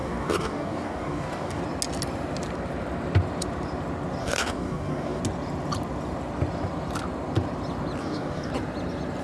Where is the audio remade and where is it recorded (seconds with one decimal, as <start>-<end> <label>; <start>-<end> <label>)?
0.0-1.6 remade; 1.6-4.2 recorded; 4.2-5.2 remade; 5.2-8.0 recorded; 8.0-8.5 remade; 8.5-9.2 recorded